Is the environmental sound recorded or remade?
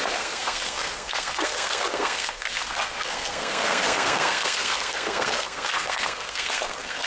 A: remade